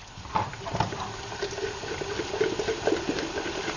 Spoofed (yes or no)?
no